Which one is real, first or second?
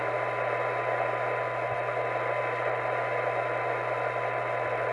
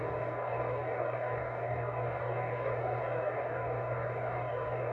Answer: first